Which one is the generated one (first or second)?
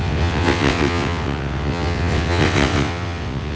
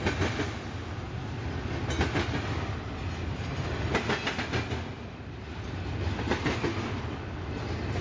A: first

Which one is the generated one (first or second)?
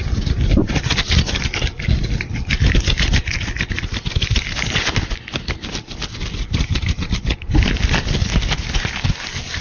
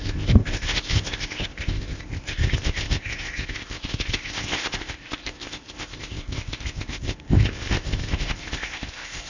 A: second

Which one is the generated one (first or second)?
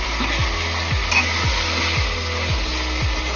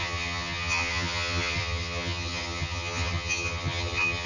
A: second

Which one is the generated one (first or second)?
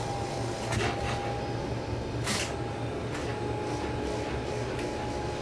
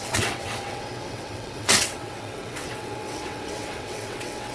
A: second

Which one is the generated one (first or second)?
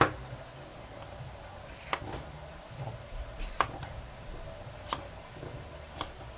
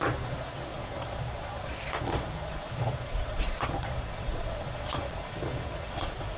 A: second